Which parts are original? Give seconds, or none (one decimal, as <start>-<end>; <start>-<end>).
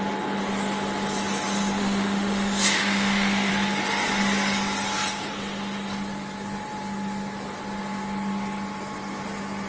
0.0-1.8; 3.5-9.7